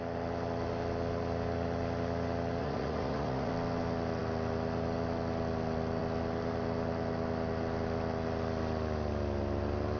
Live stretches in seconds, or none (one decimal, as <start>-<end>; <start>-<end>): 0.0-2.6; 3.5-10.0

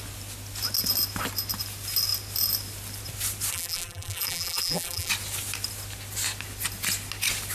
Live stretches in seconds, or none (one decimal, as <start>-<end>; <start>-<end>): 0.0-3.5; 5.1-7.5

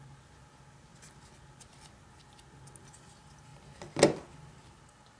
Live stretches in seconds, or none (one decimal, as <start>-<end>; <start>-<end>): 0.0-5.2